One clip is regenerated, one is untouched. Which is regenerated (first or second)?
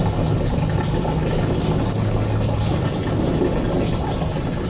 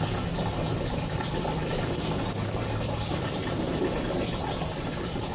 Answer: second